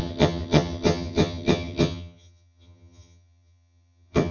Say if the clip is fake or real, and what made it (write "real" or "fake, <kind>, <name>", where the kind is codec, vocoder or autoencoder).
fake, vocoder, HiFi-GAN